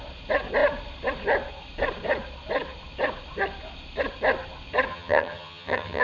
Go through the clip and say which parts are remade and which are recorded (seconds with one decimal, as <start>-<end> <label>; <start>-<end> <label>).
0.0-4.9 recorded; 4.9-6.0 remade